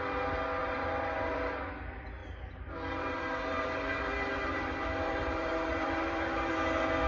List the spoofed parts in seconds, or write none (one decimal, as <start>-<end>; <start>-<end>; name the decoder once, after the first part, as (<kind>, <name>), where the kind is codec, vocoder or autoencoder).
0.6-1.6 (vocoder, BigVGAN v2); 2.2-6.5